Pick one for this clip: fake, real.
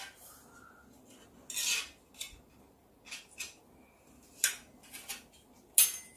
real